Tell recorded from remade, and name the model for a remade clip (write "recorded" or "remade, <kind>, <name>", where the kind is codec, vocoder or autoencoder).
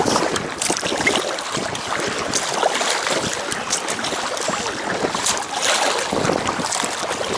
recorded